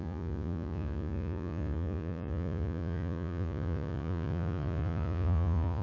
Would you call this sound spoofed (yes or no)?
yes